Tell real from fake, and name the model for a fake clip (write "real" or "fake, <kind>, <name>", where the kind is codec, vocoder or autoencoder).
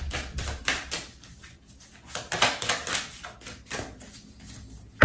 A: real